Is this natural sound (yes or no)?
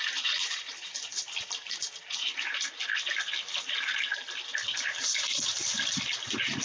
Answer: no